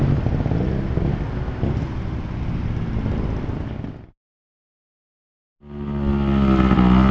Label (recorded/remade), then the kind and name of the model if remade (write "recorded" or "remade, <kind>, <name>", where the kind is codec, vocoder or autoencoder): recorded